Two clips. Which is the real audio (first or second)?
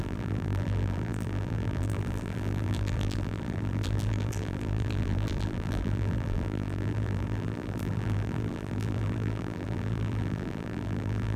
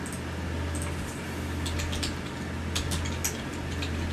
second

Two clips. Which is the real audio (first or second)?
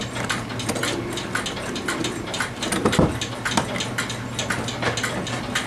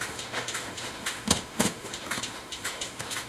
first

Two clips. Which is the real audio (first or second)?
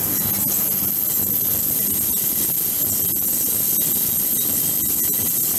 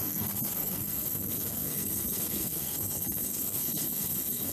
first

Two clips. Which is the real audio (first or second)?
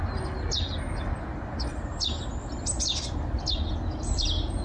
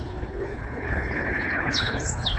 first